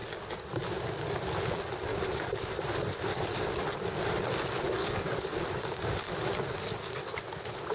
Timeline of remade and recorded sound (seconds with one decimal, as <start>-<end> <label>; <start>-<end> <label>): 0.0-1.9 recorded; 1.9-2.5 remade; 2.5-4.8 recorded; 4.8-6.1 remade; 6.1-7.7 recorded